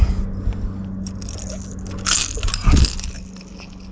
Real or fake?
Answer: real